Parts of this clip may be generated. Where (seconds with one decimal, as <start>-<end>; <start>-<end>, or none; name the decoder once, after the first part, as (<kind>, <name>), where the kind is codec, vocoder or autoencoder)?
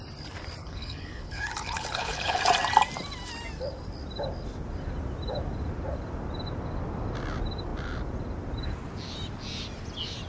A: 0.6-2.4 (codec, HILCodec)